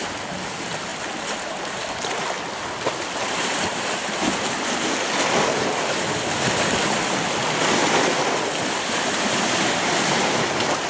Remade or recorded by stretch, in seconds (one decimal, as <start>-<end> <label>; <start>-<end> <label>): 0.0-10.9 recorded